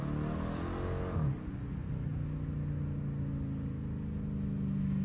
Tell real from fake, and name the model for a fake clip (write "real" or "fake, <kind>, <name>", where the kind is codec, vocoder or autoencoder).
real